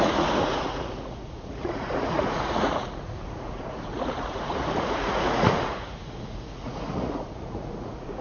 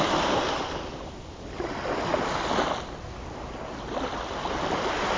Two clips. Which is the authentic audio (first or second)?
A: second